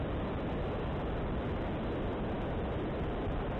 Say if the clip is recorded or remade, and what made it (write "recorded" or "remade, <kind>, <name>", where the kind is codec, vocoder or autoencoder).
recorded